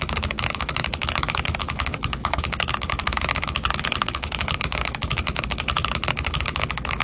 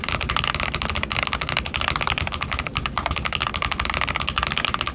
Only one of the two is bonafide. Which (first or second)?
second